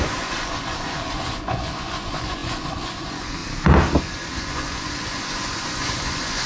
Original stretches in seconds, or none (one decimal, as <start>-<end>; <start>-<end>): 3.4-4.0